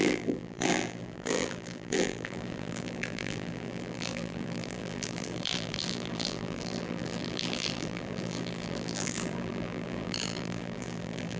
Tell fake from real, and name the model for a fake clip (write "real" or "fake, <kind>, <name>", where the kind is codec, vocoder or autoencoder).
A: fake, vocoder, BigVGAN v2